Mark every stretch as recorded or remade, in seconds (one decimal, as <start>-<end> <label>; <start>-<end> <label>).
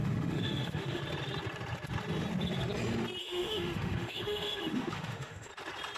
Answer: 0.0-1.0 remade; 1.0-3.2 recorded; 3.2-5.5 remade; 5.5-6.0 recorded